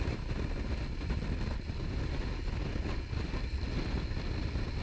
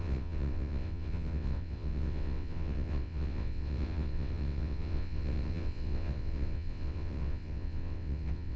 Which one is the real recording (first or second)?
first